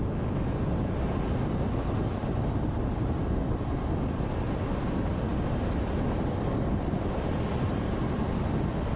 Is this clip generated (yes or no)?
yes